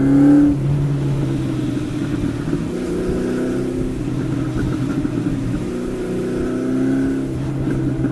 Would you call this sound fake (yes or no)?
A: no